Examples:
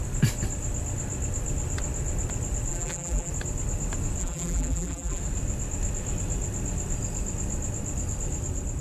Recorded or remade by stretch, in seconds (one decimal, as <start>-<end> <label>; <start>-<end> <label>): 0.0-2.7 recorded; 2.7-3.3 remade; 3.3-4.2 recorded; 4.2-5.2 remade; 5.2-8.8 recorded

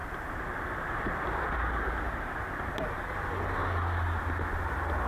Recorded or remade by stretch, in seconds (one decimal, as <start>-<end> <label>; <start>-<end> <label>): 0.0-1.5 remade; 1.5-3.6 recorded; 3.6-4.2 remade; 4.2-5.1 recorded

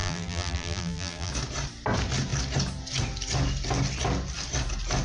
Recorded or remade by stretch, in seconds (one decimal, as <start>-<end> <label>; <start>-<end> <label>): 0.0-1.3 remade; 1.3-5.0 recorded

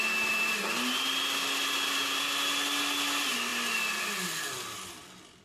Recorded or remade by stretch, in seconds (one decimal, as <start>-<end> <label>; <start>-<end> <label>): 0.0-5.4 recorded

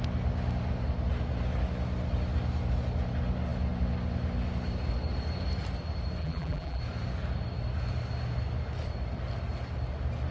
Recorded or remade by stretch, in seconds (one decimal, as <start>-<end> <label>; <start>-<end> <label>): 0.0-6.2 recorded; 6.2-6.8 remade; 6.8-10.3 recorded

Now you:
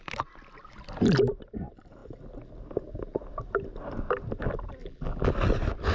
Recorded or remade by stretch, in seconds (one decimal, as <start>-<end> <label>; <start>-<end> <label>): 0.0-4.8 recorded; 4.8-5.3 remade; 5.3-5.9 recorded